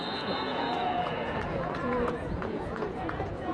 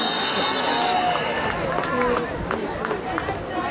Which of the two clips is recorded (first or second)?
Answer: second